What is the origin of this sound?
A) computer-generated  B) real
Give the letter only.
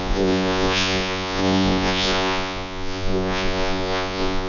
A